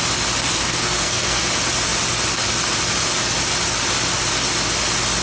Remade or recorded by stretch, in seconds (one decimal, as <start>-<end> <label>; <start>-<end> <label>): 0.0-0.5 recorded; 0.5-1.4 remade; 1.4-5.2 recorded